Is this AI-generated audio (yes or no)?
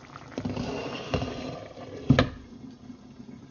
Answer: no